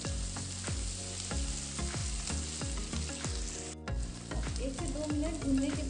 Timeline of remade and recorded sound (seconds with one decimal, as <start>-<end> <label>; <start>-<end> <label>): 0.0-5.9 recorded